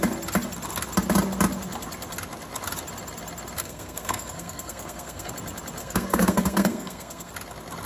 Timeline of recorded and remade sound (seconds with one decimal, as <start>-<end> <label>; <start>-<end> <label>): 0.0-3.6 recorded; 3.6-5.3 remade; 5.3-5.8 recorded; 5.8-7.3 remade; 7.3-7.9 recorded